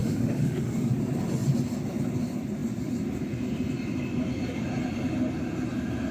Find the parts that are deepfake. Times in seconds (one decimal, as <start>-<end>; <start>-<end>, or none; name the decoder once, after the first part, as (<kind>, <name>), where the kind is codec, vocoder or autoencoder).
0.0-0.9 (autoencoder, DAC-VAE)